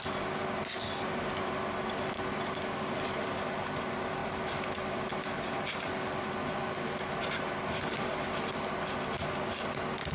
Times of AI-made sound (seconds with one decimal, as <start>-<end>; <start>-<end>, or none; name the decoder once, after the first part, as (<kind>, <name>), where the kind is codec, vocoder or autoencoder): 4.2-4.8 (vocoder, BigVGAN v2)